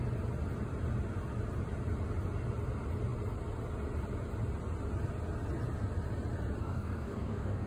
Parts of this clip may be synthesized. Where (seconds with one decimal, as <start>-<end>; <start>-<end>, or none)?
6.6-7.7